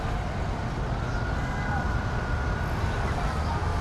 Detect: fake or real real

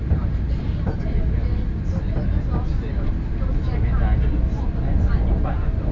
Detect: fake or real real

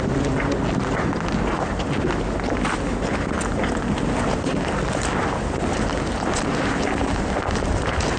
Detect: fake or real real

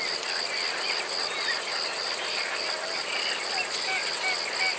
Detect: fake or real real